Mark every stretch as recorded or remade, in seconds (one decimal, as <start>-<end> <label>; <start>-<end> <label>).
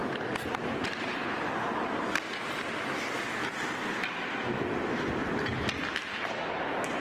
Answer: 0.0-3.4 recorded; 3.4-4.0 remade; 4.0-7.0 recorded